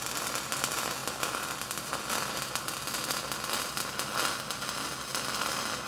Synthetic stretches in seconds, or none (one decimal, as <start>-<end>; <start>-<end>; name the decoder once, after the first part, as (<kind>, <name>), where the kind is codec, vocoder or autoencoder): none